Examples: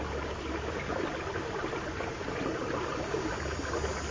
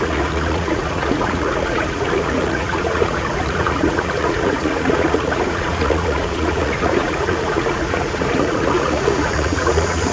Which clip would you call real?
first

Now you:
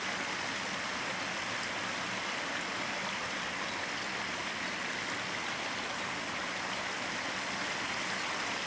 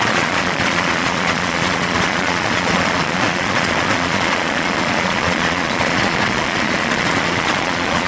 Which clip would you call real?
first